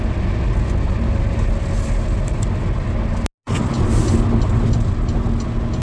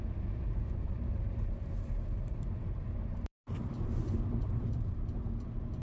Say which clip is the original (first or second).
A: first